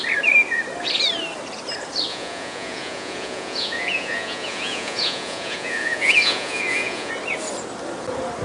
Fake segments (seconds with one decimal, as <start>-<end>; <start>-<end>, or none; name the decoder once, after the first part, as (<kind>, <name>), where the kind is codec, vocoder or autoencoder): 2.1-7.1 (vocoder, Vocos)